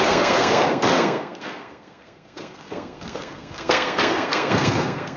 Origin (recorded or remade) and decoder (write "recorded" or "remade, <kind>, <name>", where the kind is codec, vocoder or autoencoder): remade, codec, SNAC